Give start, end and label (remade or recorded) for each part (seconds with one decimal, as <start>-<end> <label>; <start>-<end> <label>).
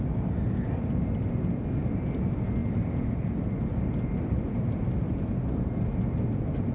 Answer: 0.0-6.7 recorded